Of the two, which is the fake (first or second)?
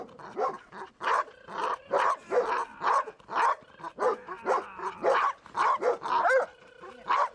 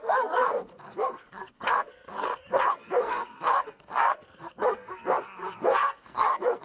second